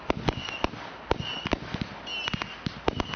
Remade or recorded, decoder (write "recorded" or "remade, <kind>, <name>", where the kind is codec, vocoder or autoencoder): recorded